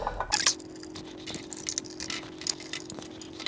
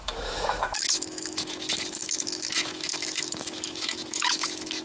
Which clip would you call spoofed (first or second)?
second